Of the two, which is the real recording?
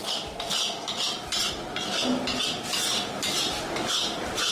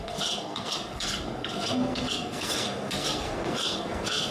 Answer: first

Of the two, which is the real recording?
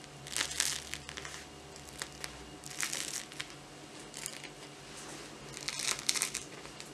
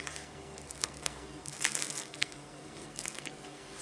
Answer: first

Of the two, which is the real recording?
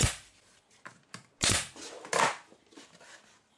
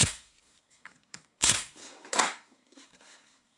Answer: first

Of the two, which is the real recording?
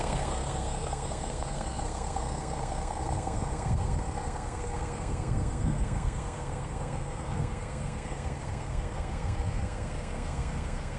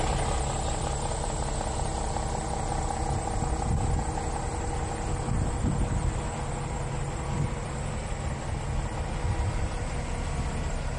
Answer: second